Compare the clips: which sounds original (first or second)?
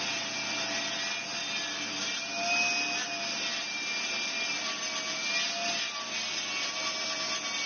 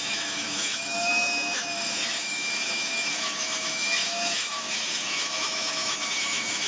first